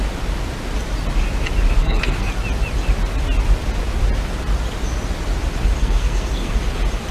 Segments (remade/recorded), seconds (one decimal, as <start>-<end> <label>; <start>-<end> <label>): 0.0-1.8 recorded; 1.8-2.3 remade; 2.3-5.8 recorded; 5.8-6.6 remade; 6.6-7.1 recorded